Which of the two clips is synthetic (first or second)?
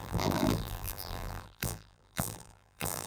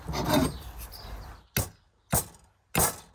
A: first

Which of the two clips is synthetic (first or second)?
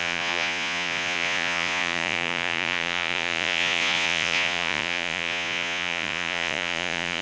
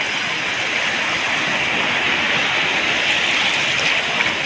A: first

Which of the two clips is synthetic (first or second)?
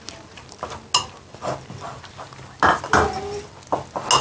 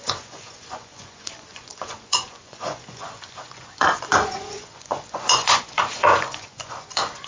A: second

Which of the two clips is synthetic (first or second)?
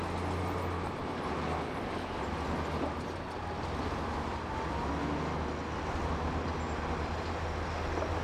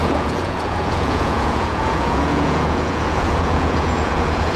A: second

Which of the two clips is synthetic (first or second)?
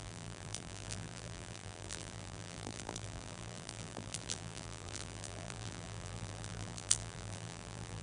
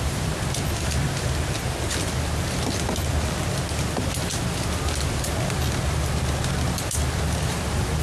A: first